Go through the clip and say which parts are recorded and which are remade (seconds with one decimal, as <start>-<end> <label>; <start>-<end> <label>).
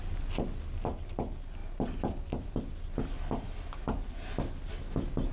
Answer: 0.0-5.3 recorded